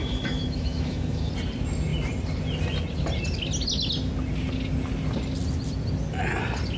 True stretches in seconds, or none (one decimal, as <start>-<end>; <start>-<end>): 1.3-6.8